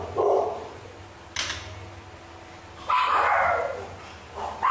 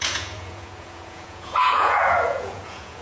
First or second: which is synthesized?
second